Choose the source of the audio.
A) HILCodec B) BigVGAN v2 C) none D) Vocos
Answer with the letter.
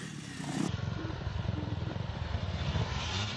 B